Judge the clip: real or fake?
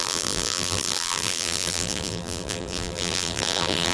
fake